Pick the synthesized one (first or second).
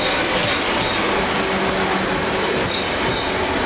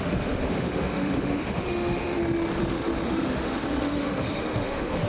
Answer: second